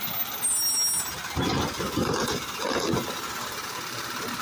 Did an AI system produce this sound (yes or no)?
no